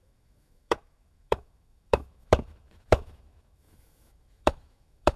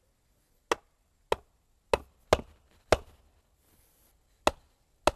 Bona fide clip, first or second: second